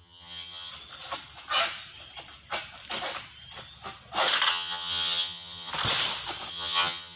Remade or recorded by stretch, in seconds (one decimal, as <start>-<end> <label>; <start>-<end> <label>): 0.0-0.7 remade; 0.7-4.5 recorded; 4.5-5.7 remade; 5.7-6.5 recorded; 6.5-7.2 remade